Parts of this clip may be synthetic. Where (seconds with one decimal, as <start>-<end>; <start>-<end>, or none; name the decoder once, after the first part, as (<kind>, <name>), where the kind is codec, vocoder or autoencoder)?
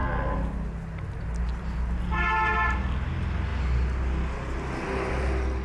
none